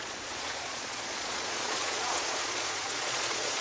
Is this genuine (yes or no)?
no